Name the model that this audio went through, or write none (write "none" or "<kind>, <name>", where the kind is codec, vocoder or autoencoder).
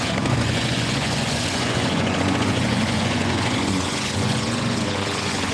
vocoder, Vocos